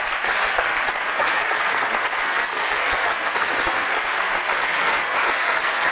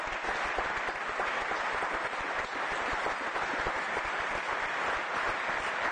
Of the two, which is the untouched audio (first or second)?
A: second